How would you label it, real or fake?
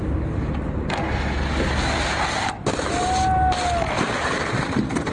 real